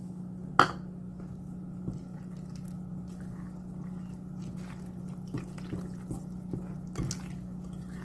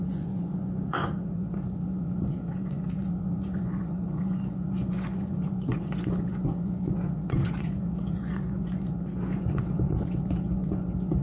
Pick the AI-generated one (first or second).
second